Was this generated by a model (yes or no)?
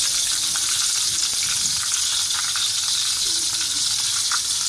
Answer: no